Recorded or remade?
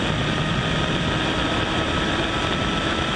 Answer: recorded